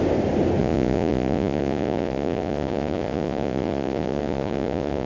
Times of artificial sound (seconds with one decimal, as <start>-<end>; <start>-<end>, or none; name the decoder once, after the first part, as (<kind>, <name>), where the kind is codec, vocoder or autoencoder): 0.6-5.1 (vocoder, Vocos)